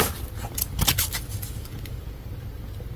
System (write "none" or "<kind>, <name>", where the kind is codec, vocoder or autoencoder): vocoder, BigVGAN v2